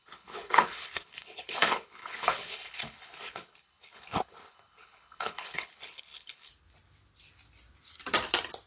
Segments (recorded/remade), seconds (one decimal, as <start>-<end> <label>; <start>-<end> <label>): 0.0-6.5 remade; 6.5-8.7 recorded